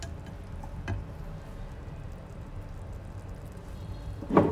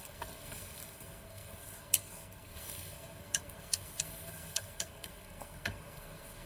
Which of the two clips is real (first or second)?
first